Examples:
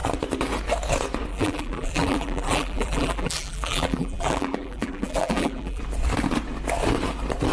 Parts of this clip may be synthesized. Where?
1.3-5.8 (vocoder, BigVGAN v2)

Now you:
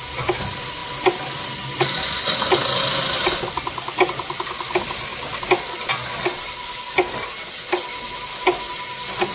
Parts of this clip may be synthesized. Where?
none

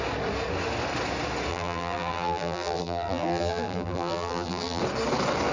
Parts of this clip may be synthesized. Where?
1.5-4.8 (vocoder, BigVGAN v2)

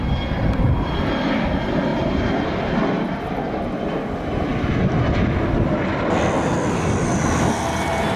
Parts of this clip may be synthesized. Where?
none

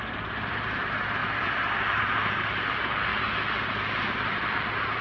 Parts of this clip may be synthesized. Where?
0.0-3.1 (vocoder, BigVGAN v2); 3.7-5.0

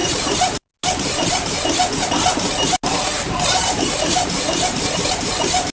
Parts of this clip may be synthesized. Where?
0.0-0.7 (vocoder, BigVGAN v2); 3.6-4.9

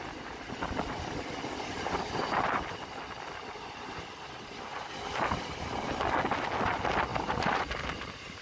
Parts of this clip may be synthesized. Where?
7.1-7.6 (vocoder, BigVGAN v2)